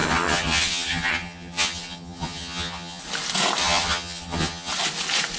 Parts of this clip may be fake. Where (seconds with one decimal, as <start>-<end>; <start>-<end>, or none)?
0.0-3.0; 3.6-4.7